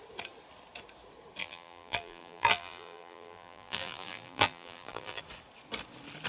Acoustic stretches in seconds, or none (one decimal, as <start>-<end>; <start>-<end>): 0.0-1.4; 5.2-6.3

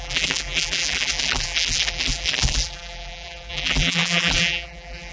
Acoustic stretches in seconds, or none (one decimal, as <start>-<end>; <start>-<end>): none